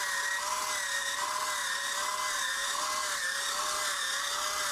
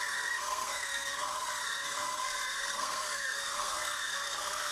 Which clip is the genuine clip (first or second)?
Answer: first